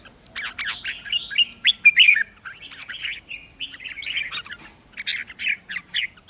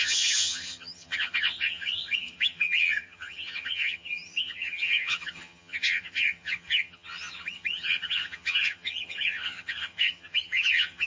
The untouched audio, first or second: first